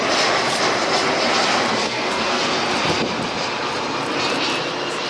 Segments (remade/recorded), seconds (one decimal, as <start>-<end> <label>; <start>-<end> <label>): 0.0-1.8 recorded; 1.8-2.4 remade; 2.4-5.1 recorded